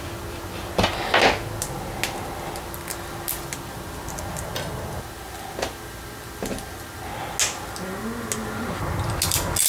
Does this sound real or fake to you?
real